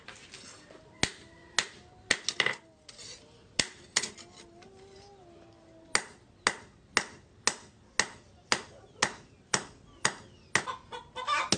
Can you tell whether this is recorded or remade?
recorded